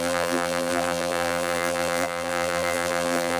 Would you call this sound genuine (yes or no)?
no